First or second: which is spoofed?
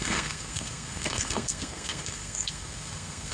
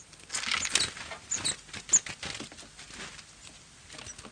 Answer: first